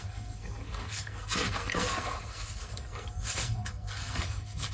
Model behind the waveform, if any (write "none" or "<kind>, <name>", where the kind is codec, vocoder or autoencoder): codec, SNAC